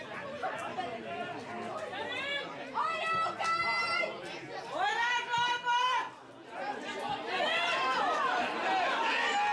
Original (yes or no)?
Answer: yes